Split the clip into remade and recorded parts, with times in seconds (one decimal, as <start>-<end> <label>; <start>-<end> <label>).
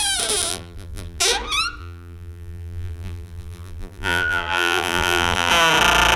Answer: 0.0-0.5 recorded; 0.5-1.2 remade; 1.2-1.8 recorded; 1.8-5.5 remade; 5.5-6.2 recorded